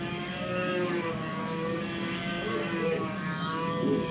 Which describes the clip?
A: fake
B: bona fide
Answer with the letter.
A